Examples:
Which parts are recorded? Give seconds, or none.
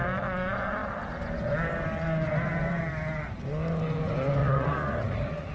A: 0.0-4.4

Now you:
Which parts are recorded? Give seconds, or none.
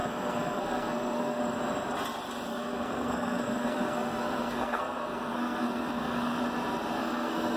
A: 1.4-2.5; 6.4-7.0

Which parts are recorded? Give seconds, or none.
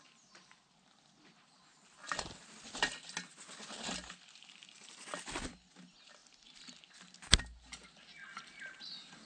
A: 0.0-9.3